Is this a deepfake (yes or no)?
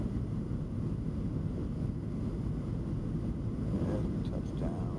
no